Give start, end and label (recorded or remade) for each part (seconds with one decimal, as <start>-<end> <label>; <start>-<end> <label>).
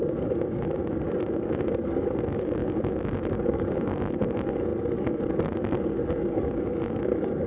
0.0-7.5 remade